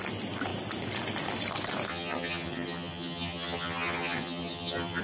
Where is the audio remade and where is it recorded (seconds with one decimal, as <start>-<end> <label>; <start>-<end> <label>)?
0.0-1.9 recorded; 1.9-5.0 remade